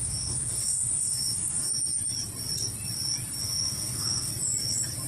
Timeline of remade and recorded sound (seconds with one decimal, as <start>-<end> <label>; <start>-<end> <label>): 0.0-1.7 remade; 1.7-3.4 recorded; 3.4-4.3 remade; 4.3-5.1 recorded